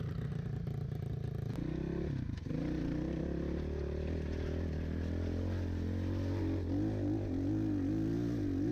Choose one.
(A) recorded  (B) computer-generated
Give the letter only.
A